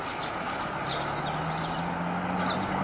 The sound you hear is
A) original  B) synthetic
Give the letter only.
A